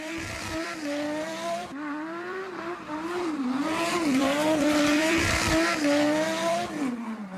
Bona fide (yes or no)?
no